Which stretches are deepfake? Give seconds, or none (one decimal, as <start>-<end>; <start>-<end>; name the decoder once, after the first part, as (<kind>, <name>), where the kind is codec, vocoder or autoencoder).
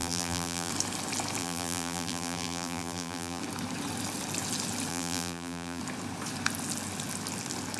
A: 0.0-0.7 (vocoder, BigVGAN v2); 1.4-3.4; 4.9-5.8